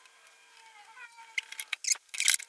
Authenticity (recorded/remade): recorded